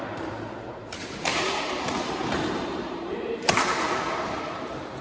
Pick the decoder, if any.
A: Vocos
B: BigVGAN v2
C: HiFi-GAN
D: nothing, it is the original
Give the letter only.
B